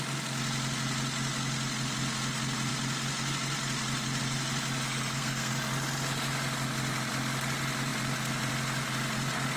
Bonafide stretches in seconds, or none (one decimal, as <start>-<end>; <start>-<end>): 0.0-4.9; 5.5-9.6